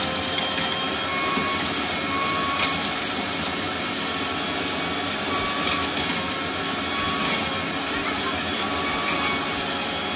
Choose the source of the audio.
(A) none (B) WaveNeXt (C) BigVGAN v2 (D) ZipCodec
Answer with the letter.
A